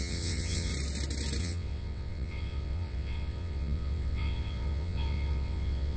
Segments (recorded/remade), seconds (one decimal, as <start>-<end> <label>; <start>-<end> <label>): 0.0-0.7 remade; 0.7-1.4 recorded; 1.4-6.0 remade